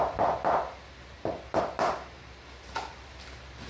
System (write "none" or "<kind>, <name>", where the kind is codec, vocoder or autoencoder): none